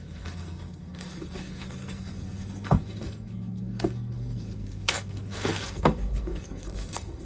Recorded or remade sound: remade